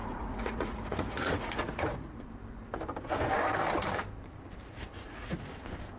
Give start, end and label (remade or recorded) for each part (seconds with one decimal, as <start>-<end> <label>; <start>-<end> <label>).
0.0-2.2 remade; 2.2-4.6 recorded; 4.6-5.5 remade; 5.5-6.0 recorded